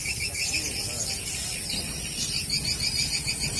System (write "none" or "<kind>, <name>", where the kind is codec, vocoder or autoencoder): none